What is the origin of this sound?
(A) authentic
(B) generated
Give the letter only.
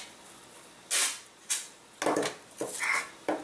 A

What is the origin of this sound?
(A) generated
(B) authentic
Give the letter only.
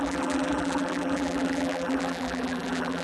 A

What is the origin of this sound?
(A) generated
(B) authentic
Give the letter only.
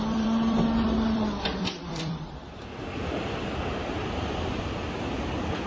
A